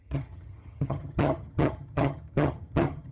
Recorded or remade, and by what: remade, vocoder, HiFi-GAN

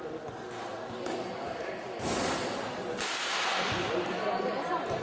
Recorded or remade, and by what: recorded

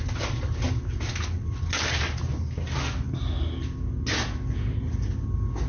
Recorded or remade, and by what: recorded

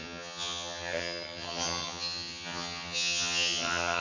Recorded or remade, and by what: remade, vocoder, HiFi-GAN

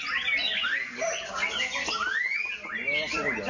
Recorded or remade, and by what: recorded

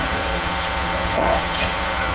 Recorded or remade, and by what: remade, vocoder, HiFi-GAN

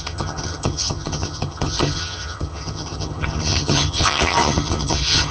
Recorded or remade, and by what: remade, vocoder, HiFi-GAN